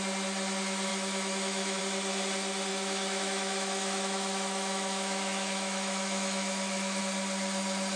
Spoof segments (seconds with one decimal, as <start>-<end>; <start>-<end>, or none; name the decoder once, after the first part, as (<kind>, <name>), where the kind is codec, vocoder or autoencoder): 0.9-1.8 (autoencoder, DAC-VAE); 2.7-7.0